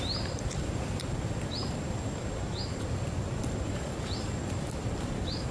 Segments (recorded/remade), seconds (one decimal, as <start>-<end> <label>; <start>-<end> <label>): 0.0-1.6 recorded; 1.6-4.9 remade; 4.9-5.5 recorded

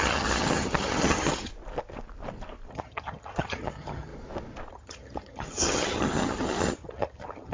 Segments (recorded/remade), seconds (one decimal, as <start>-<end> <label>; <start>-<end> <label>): 0.0-1.5 remade; 1.5-2.7 recorded; 2.7-4.1 remade; 4.1-4.7 recorded; 4.7-7.5 remade

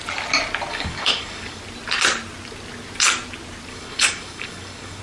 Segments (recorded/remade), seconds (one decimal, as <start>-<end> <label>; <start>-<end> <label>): 0.0-0.7 recorded; 0.7-1.6 remade; 1.6-3.7 recorded; 3.7-5.0 remade

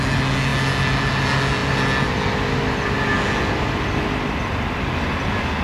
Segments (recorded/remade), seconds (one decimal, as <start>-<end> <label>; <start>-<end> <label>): 0.0-5.6 recorded

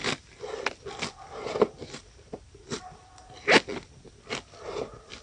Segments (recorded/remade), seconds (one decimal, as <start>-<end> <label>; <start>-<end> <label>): 0.0-0.9 remade; 0.9-5.2 recorded

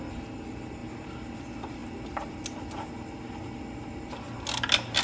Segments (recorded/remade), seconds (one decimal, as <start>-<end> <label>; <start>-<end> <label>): 0.0-5.0 recorded

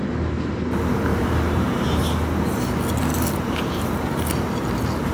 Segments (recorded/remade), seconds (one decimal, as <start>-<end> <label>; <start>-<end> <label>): 0.0-1.1 recorded; 1.1-2.0 remade; 2.0-5.1 recorded

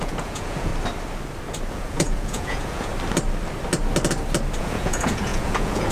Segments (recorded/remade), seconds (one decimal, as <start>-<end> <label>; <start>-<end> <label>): 0.0-0.7 remade; 0.7-1.7 recorded; 1.7-2.9 remade; 2.9-4.6 recorded; 4.6-5.9 remade